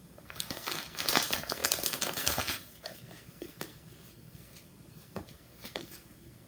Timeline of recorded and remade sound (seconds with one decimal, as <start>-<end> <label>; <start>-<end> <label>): 0.0-6.5 remade